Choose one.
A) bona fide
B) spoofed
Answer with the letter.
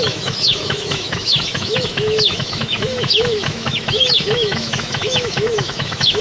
B